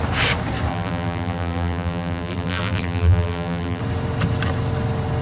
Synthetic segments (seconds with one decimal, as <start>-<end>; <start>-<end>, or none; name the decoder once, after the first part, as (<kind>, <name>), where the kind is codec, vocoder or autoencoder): 0.7-3.8 (vocoder, BigVGAN v2)

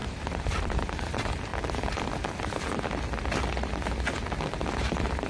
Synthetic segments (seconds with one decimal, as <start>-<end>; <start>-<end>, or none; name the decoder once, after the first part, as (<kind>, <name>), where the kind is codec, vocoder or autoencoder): none

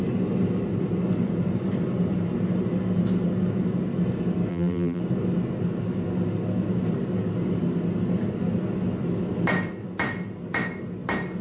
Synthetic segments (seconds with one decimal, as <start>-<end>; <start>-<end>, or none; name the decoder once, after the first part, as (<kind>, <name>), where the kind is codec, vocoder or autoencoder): 4.5-5.0 (vocoder, BigVGAN v2)

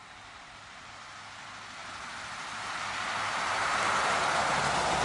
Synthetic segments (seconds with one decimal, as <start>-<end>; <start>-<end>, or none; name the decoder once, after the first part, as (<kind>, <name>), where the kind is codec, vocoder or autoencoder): 1.8-5.0 (vocoder, BigVGAN v2)

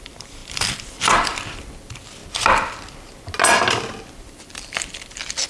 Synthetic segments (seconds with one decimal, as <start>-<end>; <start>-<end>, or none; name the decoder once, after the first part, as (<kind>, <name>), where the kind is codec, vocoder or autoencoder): 0.0-2.2 (vocoder, BigVGAN v2); 4.3-5.5

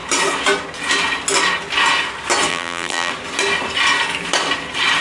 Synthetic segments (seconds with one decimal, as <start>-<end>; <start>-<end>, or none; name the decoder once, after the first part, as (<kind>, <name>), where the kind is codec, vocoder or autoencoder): 2.5-3.1 (vocoder, BigVGAN v2)